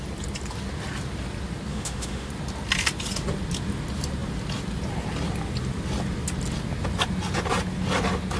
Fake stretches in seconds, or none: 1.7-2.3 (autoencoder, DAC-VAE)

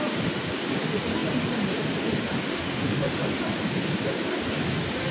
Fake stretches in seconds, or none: 2.5-3.2 (autoencoder, DAC-VAE)

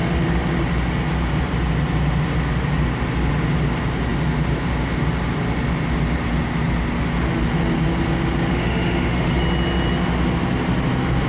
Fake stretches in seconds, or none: 8.5-9.4 (autoencoder, DAC-VAE)

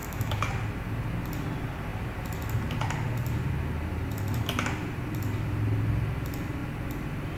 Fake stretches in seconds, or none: 0.0-0.5 (autoencoder, DAC-VAE)